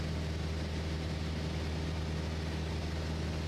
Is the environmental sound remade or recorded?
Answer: recorded